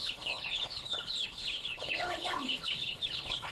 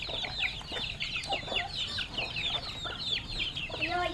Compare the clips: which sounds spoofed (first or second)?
first